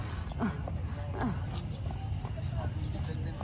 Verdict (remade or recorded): recorded